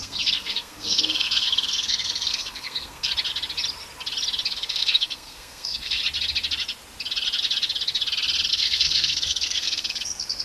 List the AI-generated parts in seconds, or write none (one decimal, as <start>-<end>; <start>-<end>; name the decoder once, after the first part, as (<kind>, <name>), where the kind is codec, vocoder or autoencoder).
0.0-3.1 (codec, SNAC); 4.5-6.0; 8.5-10.4